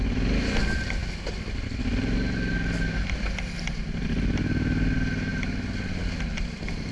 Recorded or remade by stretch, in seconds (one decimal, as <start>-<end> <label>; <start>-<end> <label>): 0.0-6.9 recorded